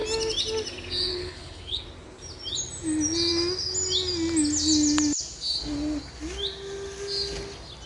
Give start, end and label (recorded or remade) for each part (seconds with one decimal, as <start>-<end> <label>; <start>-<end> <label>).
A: 0.0-1.1 recorded; 1.1-1.8 remade; 1.8-7.9 recorded